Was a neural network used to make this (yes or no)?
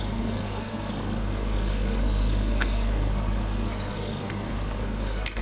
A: yes